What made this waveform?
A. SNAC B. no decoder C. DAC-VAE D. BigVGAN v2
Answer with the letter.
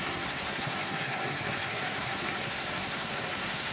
A